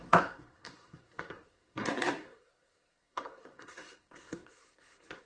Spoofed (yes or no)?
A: yes